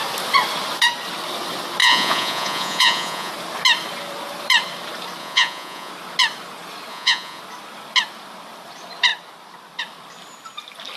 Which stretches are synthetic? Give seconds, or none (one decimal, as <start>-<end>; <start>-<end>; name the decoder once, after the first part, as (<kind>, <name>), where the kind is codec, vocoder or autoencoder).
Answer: 1.8-3.3 (vocoder, Vocos); 5.2-5.9; 6.9-7.4

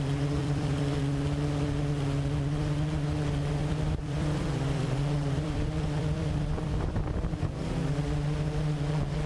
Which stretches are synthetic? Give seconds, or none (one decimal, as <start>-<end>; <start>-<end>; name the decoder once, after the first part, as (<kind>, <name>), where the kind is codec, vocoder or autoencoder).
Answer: 0.4-1.0 (vocoder, BigVGAN v2); 3.6-8.0

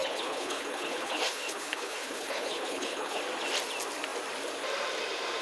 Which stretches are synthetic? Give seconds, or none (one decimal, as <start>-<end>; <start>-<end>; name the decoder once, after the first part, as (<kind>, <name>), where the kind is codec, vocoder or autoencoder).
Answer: 0.0-3.2 (codec, HILCodec)

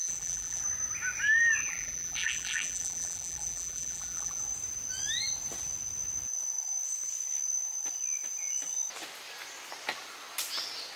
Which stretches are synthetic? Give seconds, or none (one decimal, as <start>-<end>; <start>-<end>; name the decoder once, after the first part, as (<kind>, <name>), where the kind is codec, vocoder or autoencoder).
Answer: 0.0-0.6 (vocoder, BigVGAN v2); 1.6-4.4

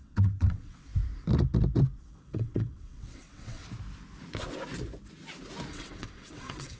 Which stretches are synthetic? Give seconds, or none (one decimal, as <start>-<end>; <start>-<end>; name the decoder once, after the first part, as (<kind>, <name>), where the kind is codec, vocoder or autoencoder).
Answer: 0.0-0.9 (vocoder, WaveNeXt); 2.0-3.6; 5.7-6.8

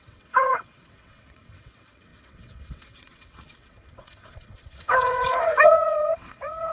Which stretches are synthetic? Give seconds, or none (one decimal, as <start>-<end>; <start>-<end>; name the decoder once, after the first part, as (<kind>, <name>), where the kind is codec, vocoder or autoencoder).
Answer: 0.0-6.7 (vocoder, WaveNeXt)

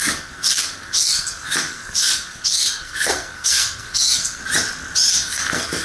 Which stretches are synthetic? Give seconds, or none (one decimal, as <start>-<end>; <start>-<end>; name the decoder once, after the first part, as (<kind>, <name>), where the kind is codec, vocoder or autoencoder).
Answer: 0.0-4.4 (codec, SNAC); 5.1-5.8